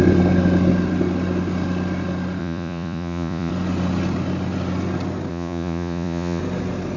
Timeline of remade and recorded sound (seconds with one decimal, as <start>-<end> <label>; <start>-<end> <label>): 0.0-2.4 recorded; 2.4-3.5 remade; 3.5-5.3 recorded; 5.3-6.4 remade; 6.4-7.0 recorded